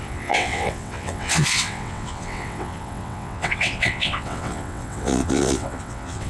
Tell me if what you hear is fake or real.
fake